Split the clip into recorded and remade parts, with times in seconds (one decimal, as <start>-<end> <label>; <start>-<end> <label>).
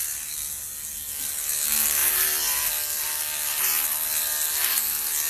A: 0.0-5.3 recorded